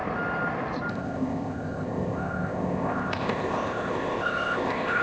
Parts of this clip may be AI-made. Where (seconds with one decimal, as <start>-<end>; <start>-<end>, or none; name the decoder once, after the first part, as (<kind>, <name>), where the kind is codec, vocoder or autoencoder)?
0.9-5.0 (codec, ZipCodec)